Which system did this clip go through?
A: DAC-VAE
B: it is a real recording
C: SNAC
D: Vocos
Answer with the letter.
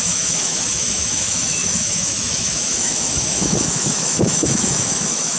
A